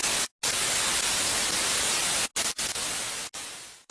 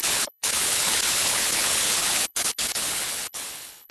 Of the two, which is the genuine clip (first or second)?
first